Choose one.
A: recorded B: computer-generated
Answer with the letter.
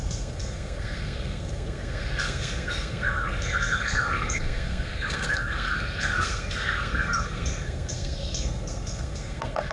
B